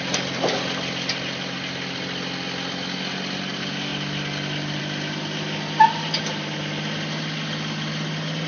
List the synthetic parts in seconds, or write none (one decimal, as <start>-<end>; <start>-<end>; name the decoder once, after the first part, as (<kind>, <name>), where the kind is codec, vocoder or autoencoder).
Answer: none